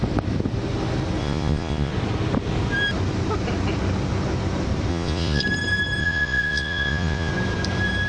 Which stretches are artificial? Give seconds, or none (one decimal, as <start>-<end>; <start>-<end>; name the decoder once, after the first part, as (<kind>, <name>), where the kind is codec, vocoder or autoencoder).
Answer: 1.2-1.9 (vocoder, Vocos); 4.9-5.4; 6.0-7.3